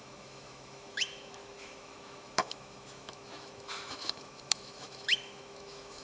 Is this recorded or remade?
remade